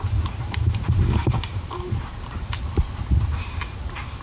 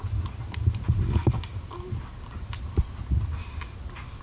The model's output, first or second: first